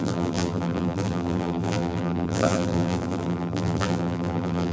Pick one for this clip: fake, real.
fake